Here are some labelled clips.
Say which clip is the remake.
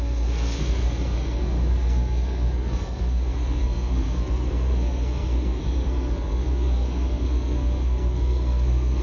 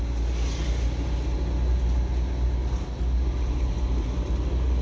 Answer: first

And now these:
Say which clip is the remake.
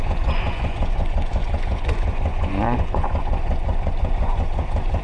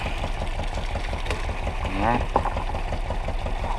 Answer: first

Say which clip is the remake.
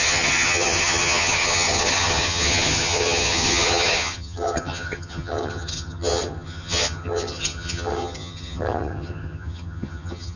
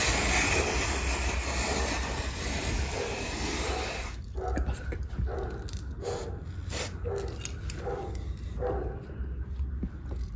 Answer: first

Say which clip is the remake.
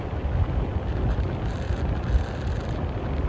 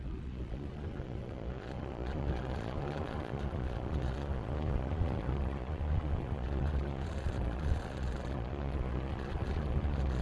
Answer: second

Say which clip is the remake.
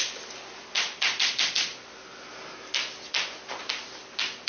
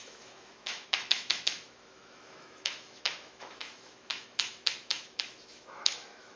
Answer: second